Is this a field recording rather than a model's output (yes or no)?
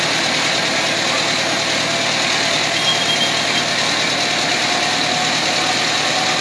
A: yes